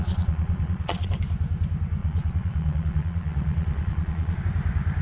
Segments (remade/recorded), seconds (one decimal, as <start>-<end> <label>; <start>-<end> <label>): 0.0-1.1 remade; 1.1-2.0 recorded; 2.0-4.4 remade; 4.4-5.0 recorded